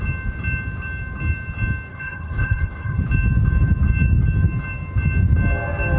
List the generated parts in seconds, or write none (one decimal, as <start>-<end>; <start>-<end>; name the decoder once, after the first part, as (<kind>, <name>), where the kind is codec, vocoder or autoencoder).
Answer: 1.9-3.0 (codec, HILCodec)